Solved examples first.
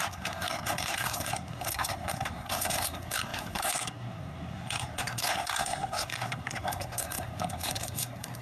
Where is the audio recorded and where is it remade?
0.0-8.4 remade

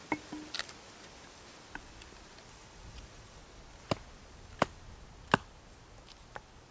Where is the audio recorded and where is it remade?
0.0-2.5 recorded; 2.5-3.4 remade; 3.4-6.7 recorded

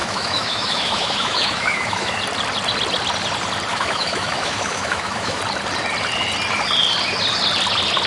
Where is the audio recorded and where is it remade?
0.0-2.2 remade; 2.2-3.7 recorded; 3.7-5.4 remade; 5.4-8.1 recorded

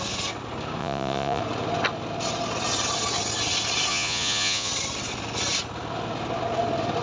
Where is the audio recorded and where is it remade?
0.0-0.8 recorded; 0.8-1.4 remade; 1.4-3.9 recorded; 3.9-4.7 remade; 4.7-7.0 recorded

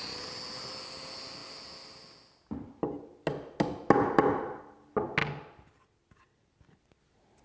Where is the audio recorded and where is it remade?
0.0-7.4 recorded